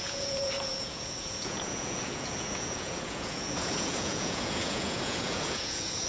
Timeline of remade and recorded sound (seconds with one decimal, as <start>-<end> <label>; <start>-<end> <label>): 0.0-6.1 remade